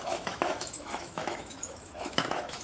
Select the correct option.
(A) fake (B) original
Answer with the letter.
A